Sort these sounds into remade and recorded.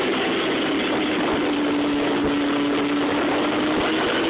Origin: recorded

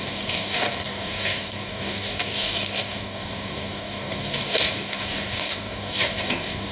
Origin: remade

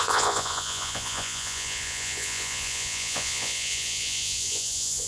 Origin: remade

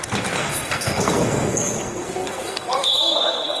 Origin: remade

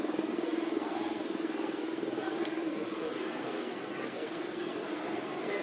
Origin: remade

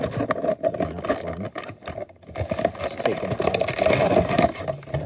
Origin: recorded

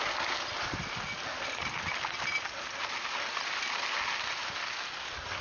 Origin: recorded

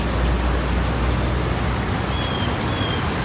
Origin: recorded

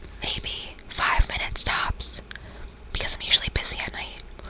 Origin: remade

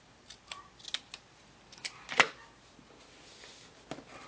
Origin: recorded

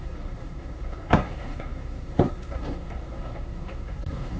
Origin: remade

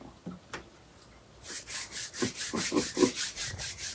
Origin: recorded